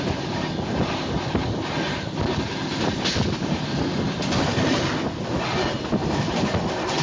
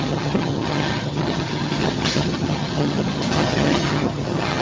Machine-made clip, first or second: second